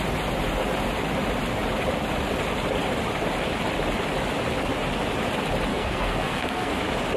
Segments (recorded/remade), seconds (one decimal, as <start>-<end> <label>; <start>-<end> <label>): 0.0-5.7 recorded; 5.7-6.8 remade; 6.8-7.2 recorded

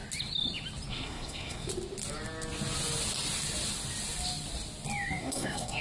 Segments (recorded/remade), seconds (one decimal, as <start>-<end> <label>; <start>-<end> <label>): 0.0-0.9 recorded; 0.9-1.7 remade; 1.7-5.2 recorded; 5.2-5.8 remade